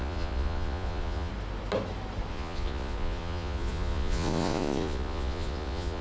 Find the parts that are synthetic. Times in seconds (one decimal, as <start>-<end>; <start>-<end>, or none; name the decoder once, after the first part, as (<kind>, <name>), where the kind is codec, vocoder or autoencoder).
0.0-1.3 (vocoder, Vocos); 2.3-6.0